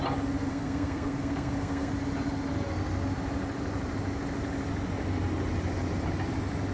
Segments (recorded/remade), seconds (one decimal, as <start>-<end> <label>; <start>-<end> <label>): 0.0-0.5 recorded; 0.5-1.9 remade; 1.9-6.7 recorded